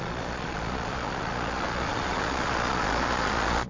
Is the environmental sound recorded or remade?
remade